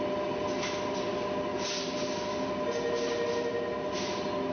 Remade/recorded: recorded